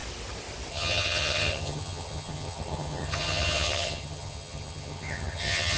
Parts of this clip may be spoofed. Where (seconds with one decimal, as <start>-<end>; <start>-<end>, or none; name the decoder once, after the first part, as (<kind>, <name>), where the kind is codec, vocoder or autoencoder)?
0.7-5.8 (vocoder, HiFi-GAN)